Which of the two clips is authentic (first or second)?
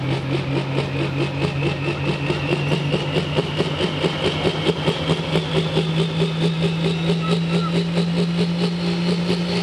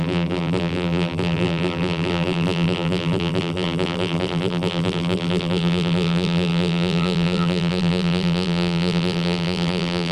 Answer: first